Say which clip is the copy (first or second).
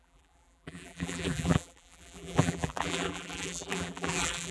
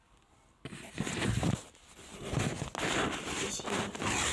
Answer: first